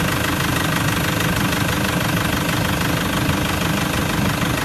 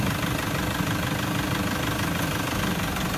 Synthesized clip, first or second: second